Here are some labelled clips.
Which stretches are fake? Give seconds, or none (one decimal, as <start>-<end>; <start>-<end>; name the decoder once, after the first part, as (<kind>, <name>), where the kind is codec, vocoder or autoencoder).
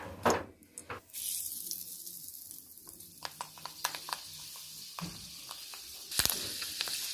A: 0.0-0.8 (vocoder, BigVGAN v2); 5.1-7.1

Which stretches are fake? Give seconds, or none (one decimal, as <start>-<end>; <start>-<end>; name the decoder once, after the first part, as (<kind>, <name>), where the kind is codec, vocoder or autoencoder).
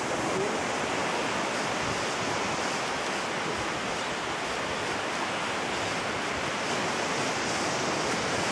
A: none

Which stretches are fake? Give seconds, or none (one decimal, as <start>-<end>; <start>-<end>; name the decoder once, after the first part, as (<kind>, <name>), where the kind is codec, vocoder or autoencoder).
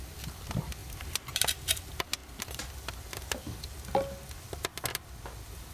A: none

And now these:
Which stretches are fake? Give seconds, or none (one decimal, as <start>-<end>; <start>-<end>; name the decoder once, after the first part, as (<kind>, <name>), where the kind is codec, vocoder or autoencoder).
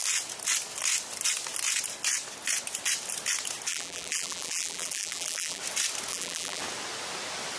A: 3.7-5.6 (vocoder, BigVGAN v2); 6.1-6.6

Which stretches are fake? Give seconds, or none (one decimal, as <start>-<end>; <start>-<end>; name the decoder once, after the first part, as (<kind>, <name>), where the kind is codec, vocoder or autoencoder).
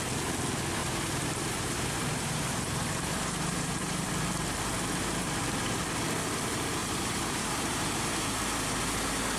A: 0.8-4.1 (vocoder, BigVGAN v2); 6.8-7.9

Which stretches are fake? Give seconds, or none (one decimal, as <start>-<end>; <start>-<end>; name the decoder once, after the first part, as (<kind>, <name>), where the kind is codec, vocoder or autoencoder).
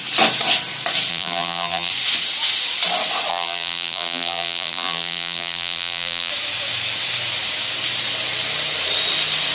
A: 1.1-1.9 (vocoder, BigVGAN v2); 3.3-6.3